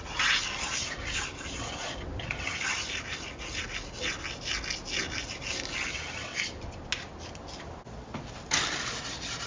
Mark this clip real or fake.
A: real